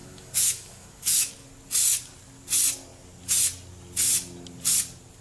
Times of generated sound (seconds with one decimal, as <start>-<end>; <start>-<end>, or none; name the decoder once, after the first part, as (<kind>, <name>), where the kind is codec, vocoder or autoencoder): 0.0-1.3 (autoencoder, DAC-VAE)

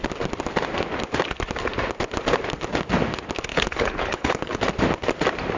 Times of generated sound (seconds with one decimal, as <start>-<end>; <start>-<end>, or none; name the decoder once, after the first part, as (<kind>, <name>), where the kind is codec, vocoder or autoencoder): 3.5-4.6 (codec, HILCodec)

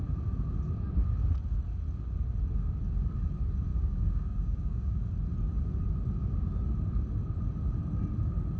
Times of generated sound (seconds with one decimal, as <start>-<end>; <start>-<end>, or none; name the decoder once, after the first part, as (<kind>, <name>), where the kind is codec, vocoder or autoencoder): 3.7-5.0 (codec, DAC)

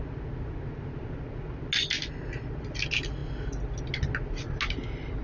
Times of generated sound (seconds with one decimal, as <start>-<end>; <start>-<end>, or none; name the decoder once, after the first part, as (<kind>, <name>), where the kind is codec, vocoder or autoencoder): none

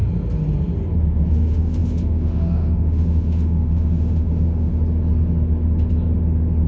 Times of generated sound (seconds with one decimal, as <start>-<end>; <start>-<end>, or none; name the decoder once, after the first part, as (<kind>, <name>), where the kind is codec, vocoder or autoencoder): 1.3-4.7 (autoencoder, DAC-VAE)

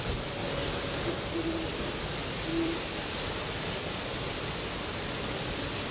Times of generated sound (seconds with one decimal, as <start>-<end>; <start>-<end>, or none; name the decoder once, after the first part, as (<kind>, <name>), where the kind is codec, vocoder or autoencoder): 2.5-3.0 (vocoder, BigVGAN v2)